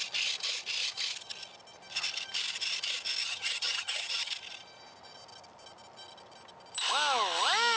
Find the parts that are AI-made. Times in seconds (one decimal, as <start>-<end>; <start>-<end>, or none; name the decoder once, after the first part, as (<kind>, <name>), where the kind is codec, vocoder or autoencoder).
3.2-4.3 (vocoder, HiFi-GAN)